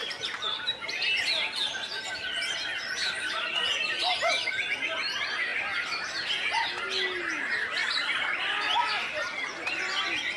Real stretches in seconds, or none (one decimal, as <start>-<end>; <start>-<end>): 1.6-7.8; 9.2-10.4